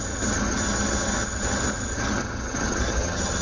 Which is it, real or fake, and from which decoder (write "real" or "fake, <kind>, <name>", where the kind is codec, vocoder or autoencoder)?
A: fake, vocoder, HiFi-GAN